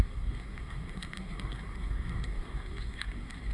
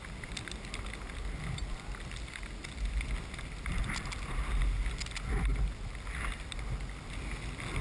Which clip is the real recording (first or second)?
second